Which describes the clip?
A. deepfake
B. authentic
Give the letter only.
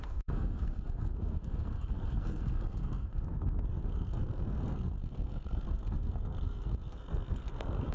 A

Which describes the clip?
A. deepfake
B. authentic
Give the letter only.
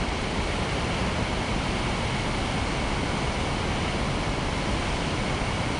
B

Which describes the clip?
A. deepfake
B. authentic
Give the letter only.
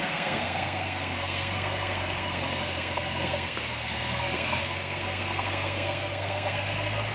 A